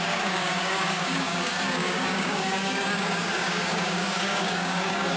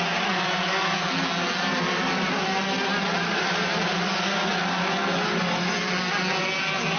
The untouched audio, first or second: second